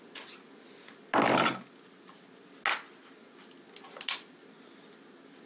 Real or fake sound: real